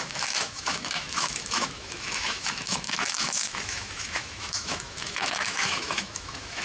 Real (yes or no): no